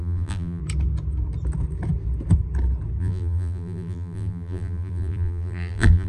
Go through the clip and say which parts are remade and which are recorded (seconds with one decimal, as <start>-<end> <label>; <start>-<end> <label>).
0.0-0.6 remade; 0.6-3.0 recorded; 3.0-6.1 remade